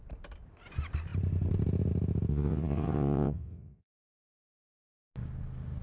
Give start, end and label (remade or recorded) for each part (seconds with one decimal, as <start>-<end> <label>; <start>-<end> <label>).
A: 0.0-2.3 recorded; 2.3-5.0 remade; 5.0-5.8 recorded